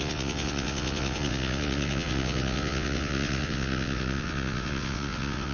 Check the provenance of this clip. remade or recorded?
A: remade